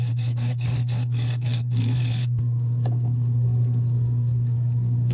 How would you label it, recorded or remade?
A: remade